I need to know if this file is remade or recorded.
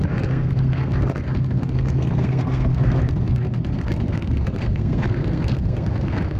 remade